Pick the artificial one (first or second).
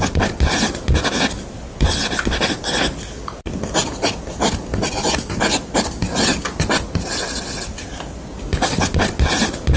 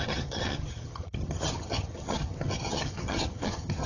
second